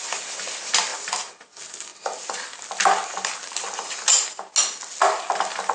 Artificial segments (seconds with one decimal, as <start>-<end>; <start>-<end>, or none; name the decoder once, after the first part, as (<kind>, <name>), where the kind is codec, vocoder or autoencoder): 0.9-1.5 (vocoder, BigVGAN v2)